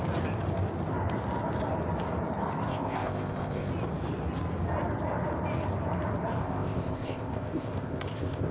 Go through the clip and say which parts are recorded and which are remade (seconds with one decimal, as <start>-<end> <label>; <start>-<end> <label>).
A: 0.0-2.7 recorded; 2.7-3.7 remade; 3.7-6.4 recorded; 6.4-8.5 remade